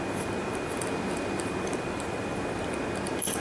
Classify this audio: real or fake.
real